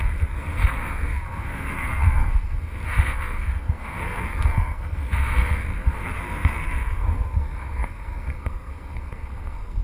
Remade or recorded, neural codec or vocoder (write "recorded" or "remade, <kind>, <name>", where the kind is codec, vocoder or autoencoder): remade, codec, SNAC